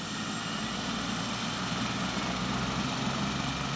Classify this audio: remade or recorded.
recorded